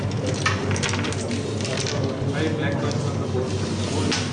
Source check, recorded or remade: recorded